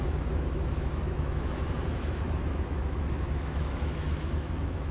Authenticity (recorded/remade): remade